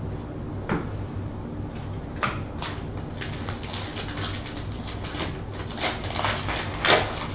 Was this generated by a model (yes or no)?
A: no